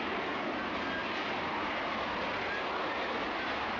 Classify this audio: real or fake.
real